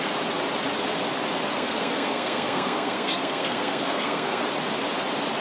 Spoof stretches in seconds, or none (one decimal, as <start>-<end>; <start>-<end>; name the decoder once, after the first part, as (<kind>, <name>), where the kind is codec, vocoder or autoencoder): 1.5-4.4 (codec, SNAC)